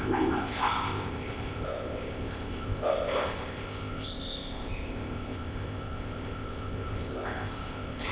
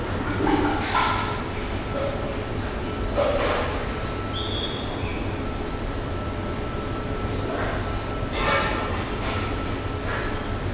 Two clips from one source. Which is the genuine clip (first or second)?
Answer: second